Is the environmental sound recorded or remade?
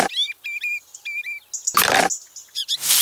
recorded